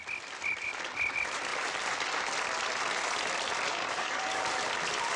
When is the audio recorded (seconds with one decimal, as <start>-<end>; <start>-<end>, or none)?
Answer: 0.0-3.7; 4.4-5.2